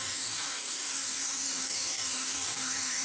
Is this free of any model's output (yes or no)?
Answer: no